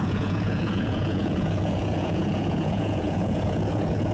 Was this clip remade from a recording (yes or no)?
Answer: yes